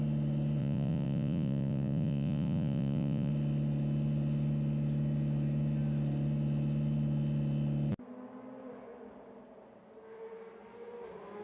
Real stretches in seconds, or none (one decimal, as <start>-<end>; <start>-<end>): 0.0-0.6; 3.3-11.4